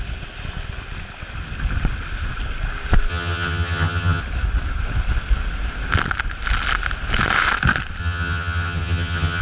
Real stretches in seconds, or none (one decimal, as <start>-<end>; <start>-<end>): 0.0-3.1; 4.2-8.0